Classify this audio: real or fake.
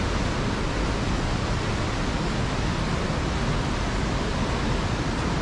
real